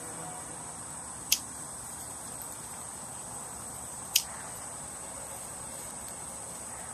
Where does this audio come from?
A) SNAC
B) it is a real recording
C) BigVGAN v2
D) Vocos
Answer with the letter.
C